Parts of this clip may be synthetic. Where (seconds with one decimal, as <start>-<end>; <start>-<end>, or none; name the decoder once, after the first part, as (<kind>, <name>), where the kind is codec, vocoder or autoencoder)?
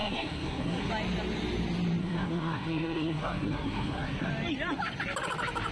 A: 0.0-0.9 (codec, SNAC); 2.0-4.3